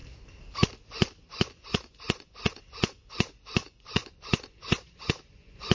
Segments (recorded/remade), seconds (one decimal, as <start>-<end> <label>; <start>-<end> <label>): 0.0-0.8 recorded; 0.8-5.7 remade